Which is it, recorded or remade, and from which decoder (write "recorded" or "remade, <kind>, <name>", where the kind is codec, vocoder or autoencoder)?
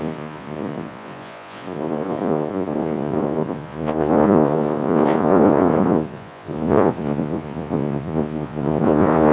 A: remade, vocoder, Vocos